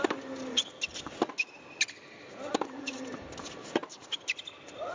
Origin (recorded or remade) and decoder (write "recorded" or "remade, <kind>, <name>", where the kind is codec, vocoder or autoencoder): recorded